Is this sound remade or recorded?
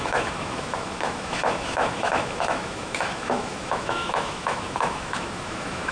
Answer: remade